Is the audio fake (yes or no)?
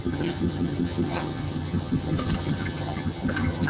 yes